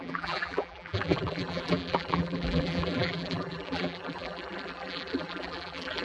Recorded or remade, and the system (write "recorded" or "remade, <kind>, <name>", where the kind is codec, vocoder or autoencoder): remade, vocoder, BigVGAN v2